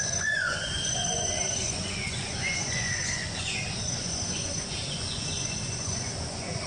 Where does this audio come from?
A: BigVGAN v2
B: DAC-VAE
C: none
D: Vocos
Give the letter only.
D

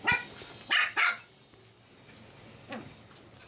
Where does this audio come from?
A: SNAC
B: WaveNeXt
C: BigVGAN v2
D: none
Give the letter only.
D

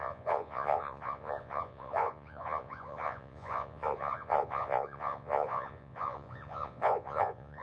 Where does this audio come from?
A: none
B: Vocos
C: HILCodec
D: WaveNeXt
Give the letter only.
B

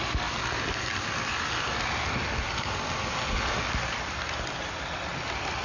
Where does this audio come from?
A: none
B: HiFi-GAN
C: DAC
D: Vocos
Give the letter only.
A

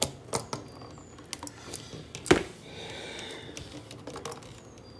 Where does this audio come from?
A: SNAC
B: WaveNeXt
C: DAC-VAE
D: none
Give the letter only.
D